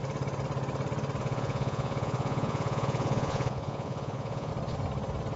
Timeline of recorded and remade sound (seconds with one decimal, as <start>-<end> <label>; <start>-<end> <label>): 0.0-1.2 recorded; 1.2-4.5 remade; 4.5-5.4 recorded